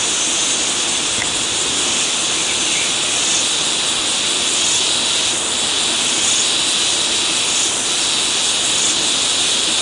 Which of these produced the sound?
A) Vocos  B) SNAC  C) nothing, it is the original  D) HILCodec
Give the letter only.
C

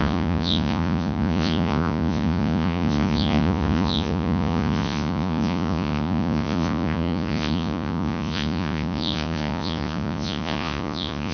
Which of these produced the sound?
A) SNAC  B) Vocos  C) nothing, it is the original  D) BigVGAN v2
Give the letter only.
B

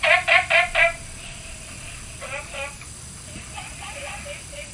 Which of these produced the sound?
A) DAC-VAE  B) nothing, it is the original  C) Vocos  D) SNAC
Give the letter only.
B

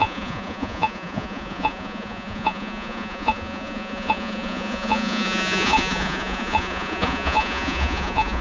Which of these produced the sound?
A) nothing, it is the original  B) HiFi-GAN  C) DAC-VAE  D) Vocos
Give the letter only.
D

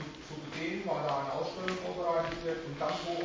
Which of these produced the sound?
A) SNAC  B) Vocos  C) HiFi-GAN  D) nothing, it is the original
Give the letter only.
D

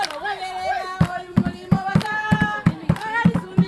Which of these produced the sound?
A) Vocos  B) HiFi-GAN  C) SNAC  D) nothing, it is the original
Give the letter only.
D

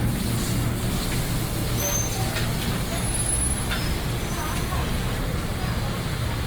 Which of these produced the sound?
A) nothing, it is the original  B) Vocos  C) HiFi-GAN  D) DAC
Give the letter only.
A